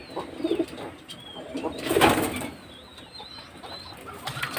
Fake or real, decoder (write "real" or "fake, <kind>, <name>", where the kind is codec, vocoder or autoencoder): real